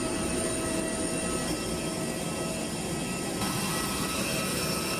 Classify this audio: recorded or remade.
recorded